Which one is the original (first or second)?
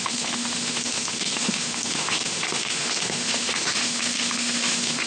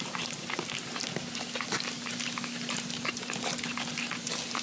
second